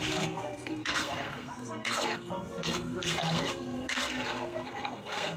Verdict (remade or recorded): remade